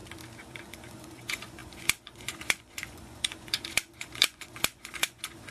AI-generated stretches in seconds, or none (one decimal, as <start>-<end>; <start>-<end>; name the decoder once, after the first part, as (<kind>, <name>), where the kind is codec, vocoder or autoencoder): 0.5-5.5 (vocoder, Vocos)